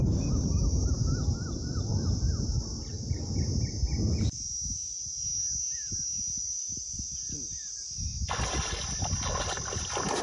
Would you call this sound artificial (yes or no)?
no